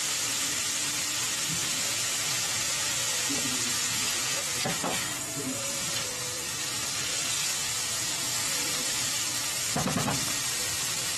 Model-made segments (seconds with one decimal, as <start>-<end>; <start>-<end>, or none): 1.6-4.4; 7.5-8.5